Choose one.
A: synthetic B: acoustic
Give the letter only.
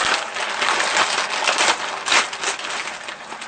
B